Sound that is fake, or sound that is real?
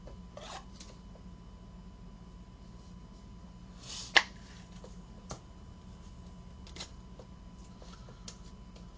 real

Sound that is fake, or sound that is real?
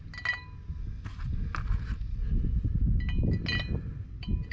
real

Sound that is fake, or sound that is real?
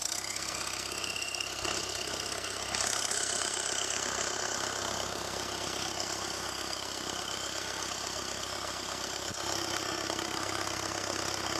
fake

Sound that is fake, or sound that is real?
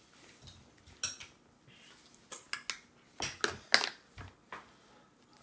real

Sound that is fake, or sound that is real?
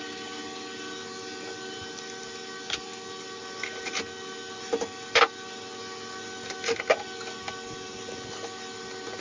real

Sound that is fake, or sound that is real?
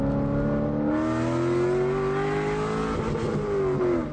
real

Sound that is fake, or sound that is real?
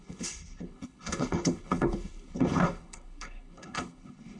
fake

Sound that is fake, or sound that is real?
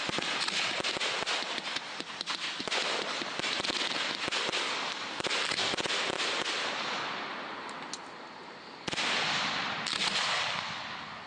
real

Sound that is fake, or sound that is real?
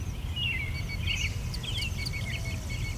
real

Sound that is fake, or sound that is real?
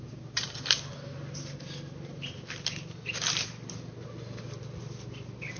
fake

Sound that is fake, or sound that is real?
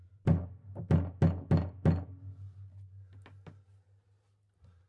real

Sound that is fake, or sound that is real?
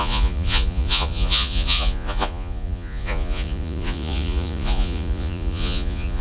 fake